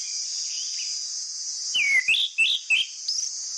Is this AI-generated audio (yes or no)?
no